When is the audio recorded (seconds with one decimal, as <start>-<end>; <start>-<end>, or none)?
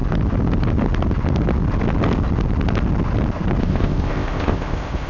0.0-3.6